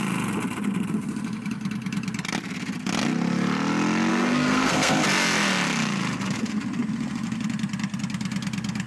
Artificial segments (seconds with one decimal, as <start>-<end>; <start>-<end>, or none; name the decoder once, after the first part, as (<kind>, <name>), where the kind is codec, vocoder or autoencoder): 4.1-5.0 (codec, SNAC)